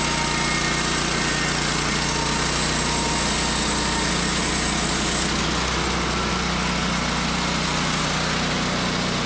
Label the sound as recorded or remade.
recorded